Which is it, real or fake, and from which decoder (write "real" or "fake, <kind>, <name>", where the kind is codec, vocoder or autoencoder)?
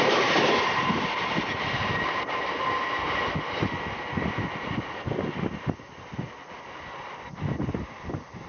real